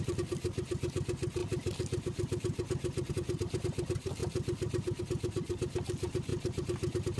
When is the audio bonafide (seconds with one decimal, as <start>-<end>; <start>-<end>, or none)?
0.0-7.2